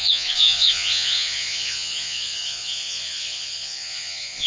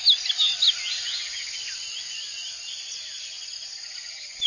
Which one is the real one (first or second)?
second